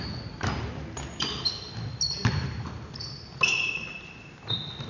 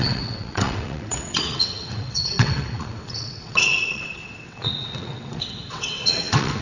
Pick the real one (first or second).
first